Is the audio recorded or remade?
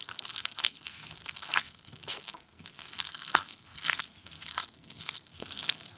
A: remade